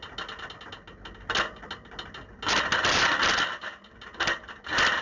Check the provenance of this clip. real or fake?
real